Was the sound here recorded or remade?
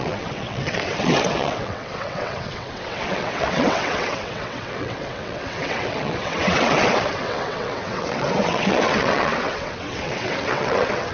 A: remade